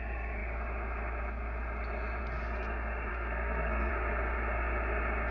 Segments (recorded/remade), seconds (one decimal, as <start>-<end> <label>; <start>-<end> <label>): 0.0-3.1 recorded; 3.1-3.9 remade; 3.9-5.3 recorded

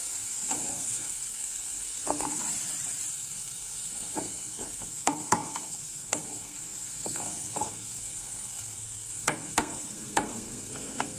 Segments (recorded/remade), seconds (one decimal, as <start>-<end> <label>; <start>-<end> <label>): 0.0-2.4 remade; 2.4-3.1 recorded; 3.1-11.2 remade

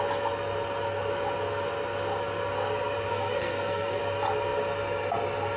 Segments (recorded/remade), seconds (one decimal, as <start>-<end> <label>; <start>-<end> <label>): 0.0-3.1 recorded; 3.1-4.0 remade; 4.0-5.6 recorded

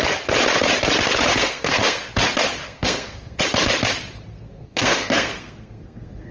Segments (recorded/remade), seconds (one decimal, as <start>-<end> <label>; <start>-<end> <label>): 0.0-1.3 recorded; 1.3-2.1 remade; 2.1-2.6 recorded; 2.6-3.4 remade; 3.4-4.3 recorded; 4.3-6.3 remade